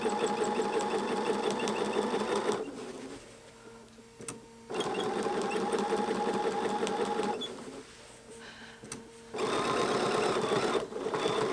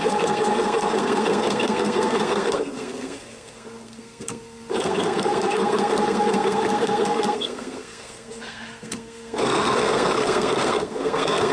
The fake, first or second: second